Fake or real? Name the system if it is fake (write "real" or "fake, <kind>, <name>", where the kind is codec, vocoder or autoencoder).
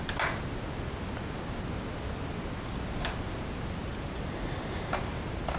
real